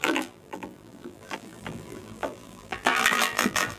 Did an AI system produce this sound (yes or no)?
yes